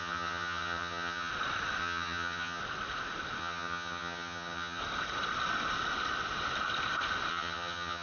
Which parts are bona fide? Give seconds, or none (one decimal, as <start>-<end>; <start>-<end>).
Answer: 1.3-1.8; 2.6-3.4; 4.8-7.3